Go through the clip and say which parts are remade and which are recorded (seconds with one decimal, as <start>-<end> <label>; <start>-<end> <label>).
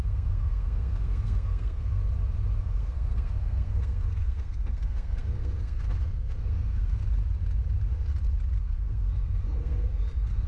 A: 0.0-2.0 remade; 2.0-2.6 recorded; 2.6-7.0 remade; 7.0-8.6 recorded; 8.6-10.5 remade